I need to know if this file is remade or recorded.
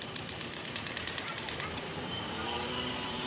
remade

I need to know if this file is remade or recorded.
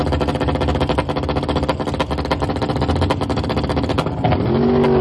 recorded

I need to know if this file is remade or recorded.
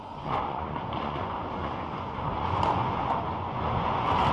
remade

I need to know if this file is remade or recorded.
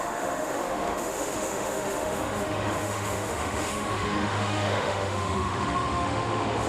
remade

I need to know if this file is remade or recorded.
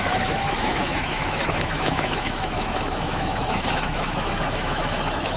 remade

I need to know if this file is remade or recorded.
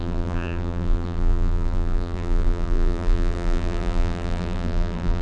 remade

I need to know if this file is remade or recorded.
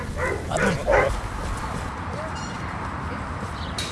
recorded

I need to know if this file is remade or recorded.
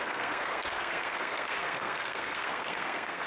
remade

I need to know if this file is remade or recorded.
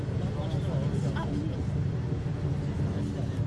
recorded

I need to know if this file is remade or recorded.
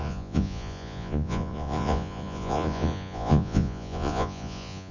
remade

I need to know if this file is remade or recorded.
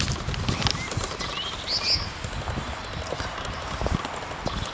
recorded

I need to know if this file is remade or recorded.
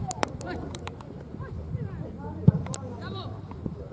remade